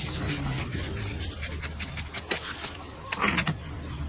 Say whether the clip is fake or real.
real